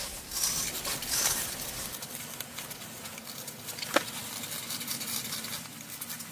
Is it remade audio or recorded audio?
recorded